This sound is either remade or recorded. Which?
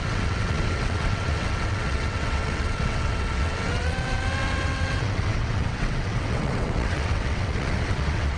remade